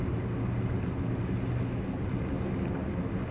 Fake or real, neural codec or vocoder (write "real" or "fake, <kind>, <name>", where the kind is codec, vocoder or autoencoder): real